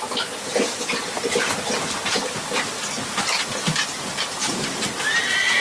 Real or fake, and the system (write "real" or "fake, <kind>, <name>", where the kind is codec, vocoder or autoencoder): real